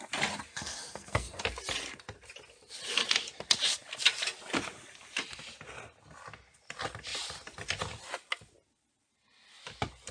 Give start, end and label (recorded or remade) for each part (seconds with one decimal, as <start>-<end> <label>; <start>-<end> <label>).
0.0-0.5 recorded; 0.5-1.4 remade; 1.4-10.1 recorded

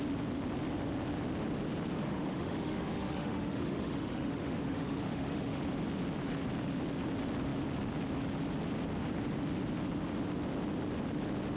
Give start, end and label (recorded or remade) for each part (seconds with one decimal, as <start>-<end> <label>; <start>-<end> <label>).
0.0-2.1 recorded; 2.1-5.6 remade; 5.6-11.6 recorded

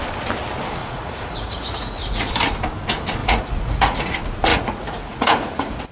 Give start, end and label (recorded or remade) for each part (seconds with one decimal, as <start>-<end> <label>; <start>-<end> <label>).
0.0-0.8 recorded; 0.8-2.3 remade; 2.3-3.2 recorded; 3.2-4.1 remade; 4.1-4.5 recorded; 4.5-5.9 remade

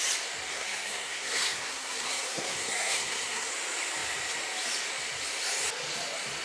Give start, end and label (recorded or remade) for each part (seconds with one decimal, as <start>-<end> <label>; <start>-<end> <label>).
0.0-0.5 recorded; 0.5-3.5 remade; 3.5-6.4 recorded

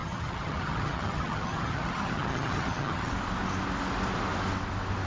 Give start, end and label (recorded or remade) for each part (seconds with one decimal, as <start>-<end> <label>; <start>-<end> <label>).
0.0-3.1 remade; 3.1-5.1 recorded

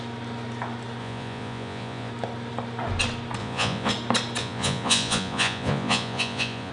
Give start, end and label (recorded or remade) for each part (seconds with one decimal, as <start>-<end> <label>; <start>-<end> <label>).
0.0-1.0 recorded; 1.0-2.1 remade; 2.1-3.4 recorded; 3.4-3.9 remade; 3.9-4.4 recorded; 4.4-6.7 remade